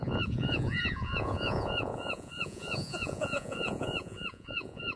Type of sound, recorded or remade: remade